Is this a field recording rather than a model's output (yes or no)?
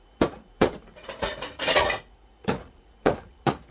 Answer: no